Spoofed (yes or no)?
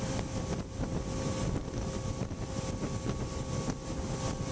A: no